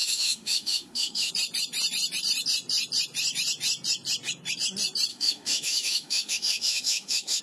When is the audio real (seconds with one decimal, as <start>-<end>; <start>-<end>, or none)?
1.3-5.1